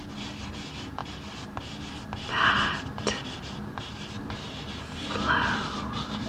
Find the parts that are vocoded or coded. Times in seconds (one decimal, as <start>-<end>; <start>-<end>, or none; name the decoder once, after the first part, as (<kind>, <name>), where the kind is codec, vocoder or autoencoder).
none

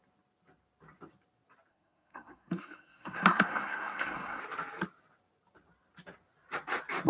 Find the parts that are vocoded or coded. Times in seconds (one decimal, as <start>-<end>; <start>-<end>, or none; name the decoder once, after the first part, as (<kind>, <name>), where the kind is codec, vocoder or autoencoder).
1.7-4.4 (codec, SNAC)

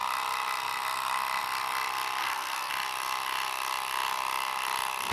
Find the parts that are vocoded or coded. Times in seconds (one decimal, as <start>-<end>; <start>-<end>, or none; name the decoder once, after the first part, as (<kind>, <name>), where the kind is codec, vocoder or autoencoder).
2.2-2.7 (codec, SNAC)

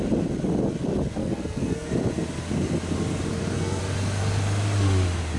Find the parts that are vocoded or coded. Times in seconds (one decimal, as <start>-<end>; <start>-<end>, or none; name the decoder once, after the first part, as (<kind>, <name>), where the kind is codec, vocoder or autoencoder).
1.2-1.9 (codec, SNAC); 3.3-3.8